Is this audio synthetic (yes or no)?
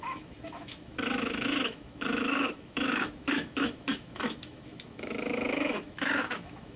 yes